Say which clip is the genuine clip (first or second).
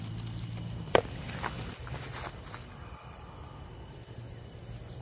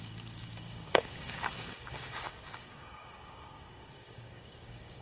first